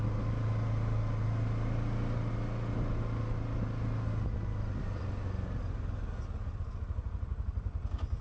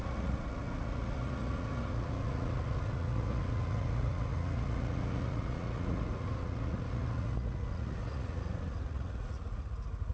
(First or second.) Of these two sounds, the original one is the first